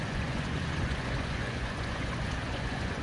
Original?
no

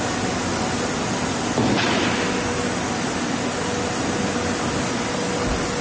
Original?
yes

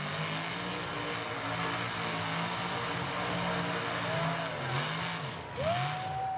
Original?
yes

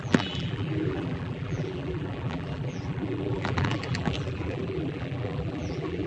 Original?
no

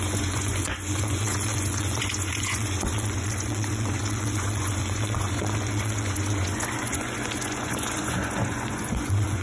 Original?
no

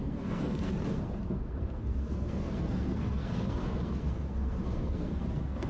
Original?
no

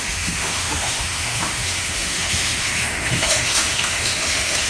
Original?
no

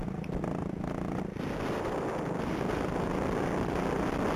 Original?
yes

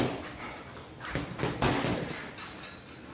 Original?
yes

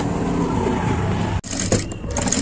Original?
yes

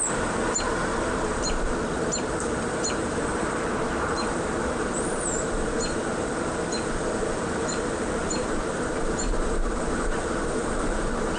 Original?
no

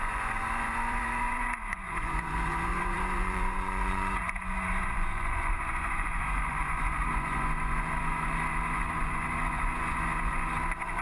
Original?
no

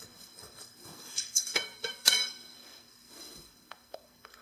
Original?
no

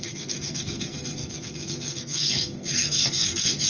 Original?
no